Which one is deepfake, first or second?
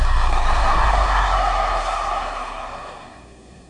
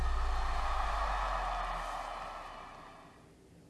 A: first